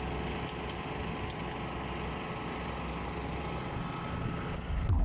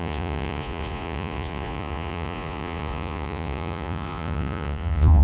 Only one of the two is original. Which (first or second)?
first